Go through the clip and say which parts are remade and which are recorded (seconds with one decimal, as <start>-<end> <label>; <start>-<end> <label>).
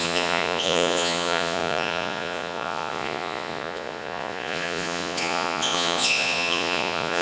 0.0-7.2 remade